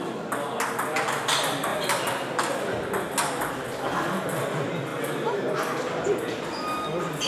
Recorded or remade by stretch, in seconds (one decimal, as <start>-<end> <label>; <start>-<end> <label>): 0.0-7.3 recorded

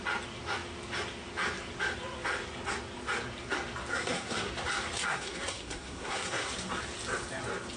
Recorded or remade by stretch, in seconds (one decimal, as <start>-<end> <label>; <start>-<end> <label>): 0.0-3.9 recorded; 3.9-4.5 remade; 4.5-5.1 recorded; 5.1-6.5 remade; 6.5-7.8 recorded

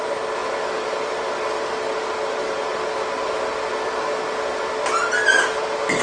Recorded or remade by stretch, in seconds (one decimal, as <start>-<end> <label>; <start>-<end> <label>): 0.0-6.0 recorded

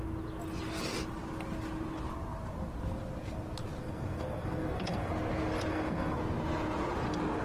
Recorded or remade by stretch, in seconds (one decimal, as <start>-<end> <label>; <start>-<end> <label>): 0.0-3.8 recorded; 3.8-5.1 remade; 5.1-5.7 recorded; 5.7-6.2 remade; 6.2-7.4 recorded